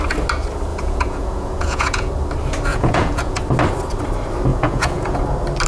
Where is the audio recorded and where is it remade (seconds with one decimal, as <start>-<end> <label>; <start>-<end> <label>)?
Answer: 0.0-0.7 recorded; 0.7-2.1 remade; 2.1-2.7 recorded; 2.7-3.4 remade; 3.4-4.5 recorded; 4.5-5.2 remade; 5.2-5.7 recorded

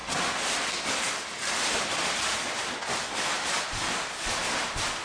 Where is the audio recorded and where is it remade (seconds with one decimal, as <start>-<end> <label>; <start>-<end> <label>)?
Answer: 0.0-5.0 recorded

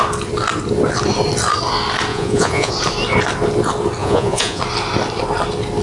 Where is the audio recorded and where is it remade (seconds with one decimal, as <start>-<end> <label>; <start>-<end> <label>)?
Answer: 0.0-2.1 recorded; 2.1-2.7 remade; 2.7-4.0 recorded; 4.0-4.6 remade; 4.6-5.8 recorded

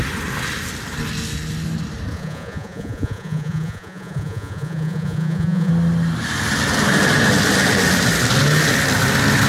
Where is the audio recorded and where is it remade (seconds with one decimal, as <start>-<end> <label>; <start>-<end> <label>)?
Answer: 0.0-2.1 recorded; 2.1-5.7 remade; 5.7-9.5 recorded

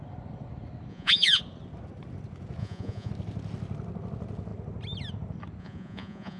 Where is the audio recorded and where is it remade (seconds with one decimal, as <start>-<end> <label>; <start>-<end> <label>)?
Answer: 0.0-0.9 recorded; 0.9-1.4 remade; 1.4-2.6 recorded; 2.6-3.1 remade; 3.1-5.6 recorded; 5.6-6.4 remade